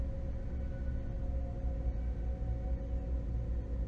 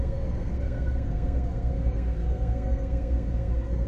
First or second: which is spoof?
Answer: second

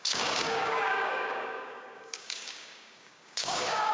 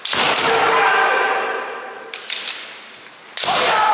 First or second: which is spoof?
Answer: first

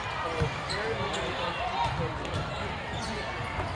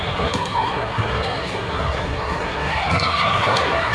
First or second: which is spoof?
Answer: second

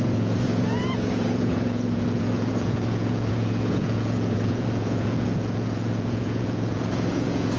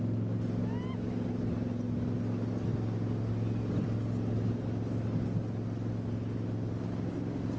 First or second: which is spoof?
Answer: first